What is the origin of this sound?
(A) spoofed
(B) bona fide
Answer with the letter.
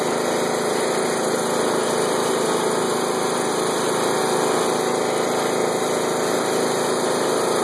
B